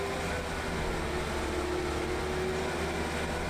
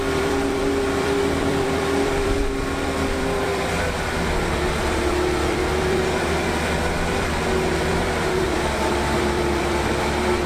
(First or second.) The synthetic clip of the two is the second